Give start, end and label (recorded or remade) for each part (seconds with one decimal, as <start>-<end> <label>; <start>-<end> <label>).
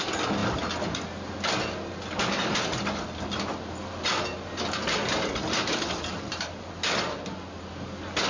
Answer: 0.0-8.3 recorded